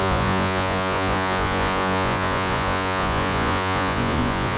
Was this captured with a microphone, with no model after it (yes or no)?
no